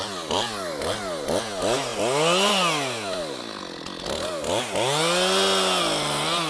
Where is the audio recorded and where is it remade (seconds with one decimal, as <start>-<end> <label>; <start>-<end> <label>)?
0.0-6.5 recorded